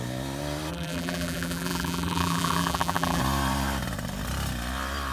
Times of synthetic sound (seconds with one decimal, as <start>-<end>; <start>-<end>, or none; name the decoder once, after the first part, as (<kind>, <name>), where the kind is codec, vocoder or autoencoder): 0.7-3.2 (vocoder, BigVGAN v2)